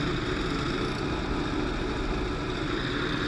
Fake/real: real